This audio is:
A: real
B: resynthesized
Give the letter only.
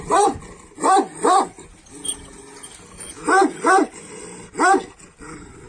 A